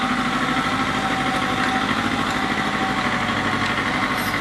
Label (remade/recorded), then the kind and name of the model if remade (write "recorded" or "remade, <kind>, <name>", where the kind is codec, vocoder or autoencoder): recorded